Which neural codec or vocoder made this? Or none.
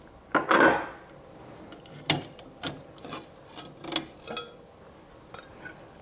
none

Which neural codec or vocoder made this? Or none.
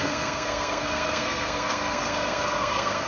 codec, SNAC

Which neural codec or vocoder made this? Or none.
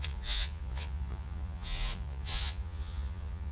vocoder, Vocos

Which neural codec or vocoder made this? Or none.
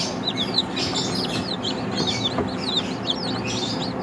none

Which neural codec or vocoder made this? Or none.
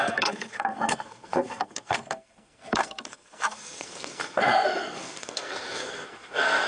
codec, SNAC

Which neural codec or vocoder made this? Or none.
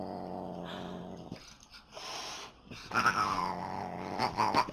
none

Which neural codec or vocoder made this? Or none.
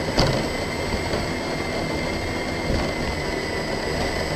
none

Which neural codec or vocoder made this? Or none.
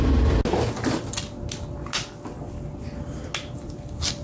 none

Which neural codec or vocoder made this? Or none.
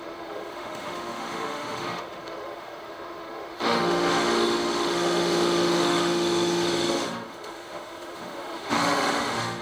autoencoder, DAC-VAE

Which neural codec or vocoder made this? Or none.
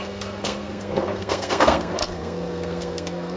codec, SNAC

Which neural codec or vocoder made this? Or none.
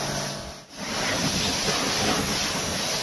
none